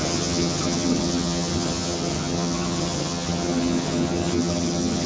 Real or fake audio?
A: fake